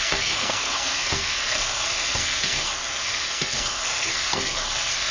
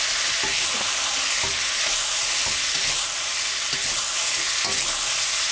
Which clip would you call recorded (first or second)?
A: second